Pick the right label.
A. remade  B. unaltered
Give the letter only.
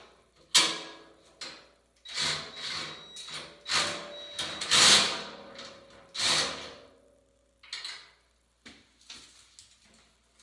B